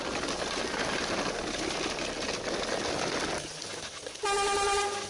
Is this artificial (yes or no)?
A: no